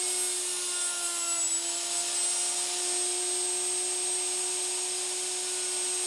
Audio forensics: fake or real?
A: real